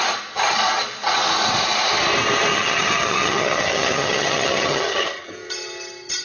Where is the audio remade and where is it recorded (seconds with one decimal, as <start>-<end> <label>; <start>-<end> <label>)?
0.0-2.5 recorded; 2.5-5.3 remade; 5.3-6.2 recorded